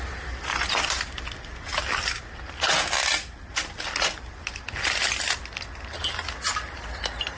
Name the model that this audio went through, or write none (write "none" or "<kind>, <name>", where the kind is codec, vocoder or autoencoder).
none